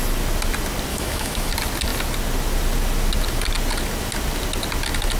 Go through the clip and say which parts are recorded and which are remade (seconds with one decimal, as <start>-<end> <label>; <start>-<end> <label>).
0.0-0.9 recorded; 0.9-1.5 remade; 1.5-5.2 recorded